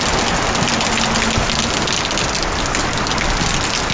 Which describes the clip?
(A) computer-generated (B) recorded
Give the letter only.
B